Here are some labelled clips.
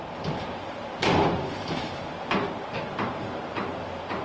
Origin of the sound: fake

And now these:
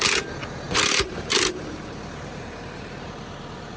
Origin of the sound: fake